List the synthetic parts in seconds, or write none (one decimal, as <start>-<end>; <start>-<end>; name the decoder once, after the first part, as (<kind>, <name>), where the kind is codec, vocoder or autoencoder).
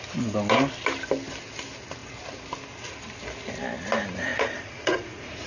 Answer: 4.3-5.5 (vocoder, Vocos)